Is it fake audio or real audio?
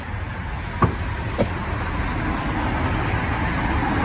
real